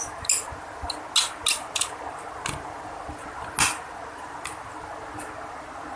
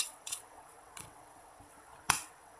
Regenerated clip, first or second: second